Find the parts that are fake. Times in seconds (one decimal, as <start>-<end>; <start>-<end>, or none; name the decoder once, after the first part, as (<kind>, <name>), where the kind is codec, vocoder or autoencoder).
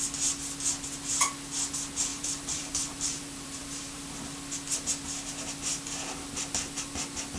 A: 2.1-4.2 (vocoder, BigVGAN v2)